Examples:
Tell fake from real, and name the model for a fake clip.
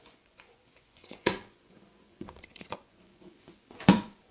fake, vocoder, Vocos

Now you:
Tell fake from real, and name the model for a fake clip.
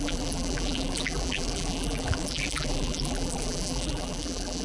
fake, vocoder, BigVGAN v2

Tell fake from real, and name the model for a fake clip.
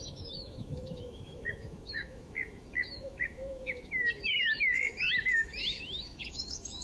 fake, autoencoder, DAC-VAE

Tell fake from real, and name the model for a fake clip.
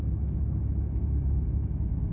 fake, autoencoder, DAC-VAE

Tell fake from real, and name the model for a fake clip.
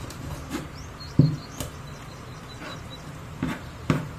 fake, vocoder, BigVGAN v2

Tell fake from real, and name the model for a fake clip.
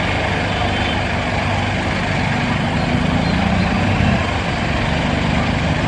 real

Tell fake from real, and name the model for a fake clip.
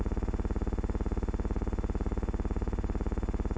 real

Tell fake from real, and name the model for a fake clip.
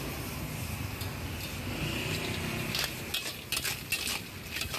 real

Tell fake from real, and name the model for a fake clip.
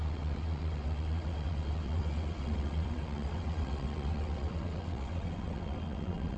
fake, vocoder, WaveNeXt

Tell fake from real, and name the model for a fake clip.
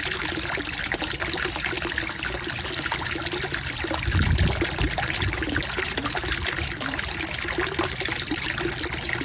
real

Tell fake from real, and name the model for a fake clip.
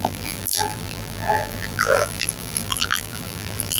fake, vocoder, BigVGAN v2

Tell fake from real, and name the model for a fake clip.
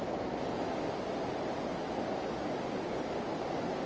real